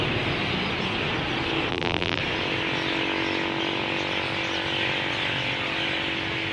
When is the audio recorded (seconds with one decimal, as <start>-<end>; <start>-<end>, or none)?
0.0-1.7; 2.2-6.5

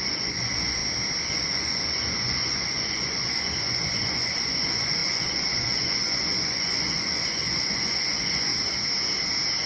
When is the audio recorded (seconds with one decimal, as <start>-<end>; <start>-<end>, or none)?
0.8-1.3; 8.5-9.7

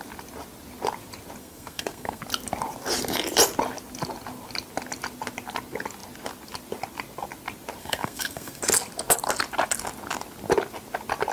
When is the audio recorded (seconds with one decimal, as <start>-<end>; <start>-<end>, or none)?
0.0-1.4; 2.2-7.8; 8.6-11.3

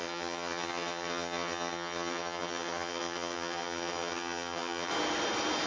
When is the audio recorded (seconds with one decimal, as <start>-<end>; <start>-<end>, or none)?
4.9-5.7

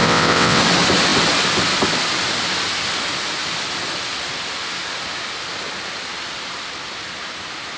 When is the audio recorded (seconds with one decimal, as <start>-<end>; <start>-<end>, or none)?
0.6-7.8

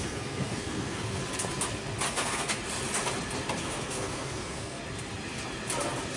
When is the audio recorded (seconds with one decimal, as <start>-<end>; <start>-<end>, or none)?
1.2-2.1; 2.6-3.6; 4.8-6.2